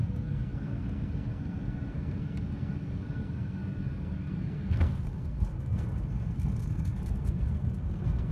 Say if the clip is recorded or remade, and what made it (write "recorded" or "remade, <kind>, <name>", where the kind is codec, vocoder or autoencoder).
remade, codec, SNAC